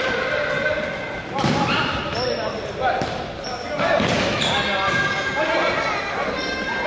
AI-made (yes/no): no